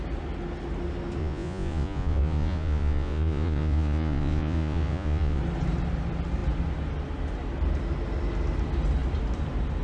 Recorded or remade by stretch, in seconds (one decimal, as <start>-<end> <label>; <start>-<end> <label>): 0.0-1.2 recorded; 1.2-5.4 remade; 5.4-9.8 recorded